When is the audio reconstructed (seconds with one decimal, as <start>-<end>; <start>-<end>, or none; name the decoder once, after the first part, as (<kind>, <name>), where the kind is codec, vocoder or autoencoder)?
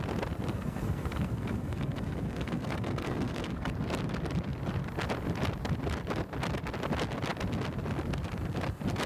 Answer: 0.5-3.7 (codec, SNAC)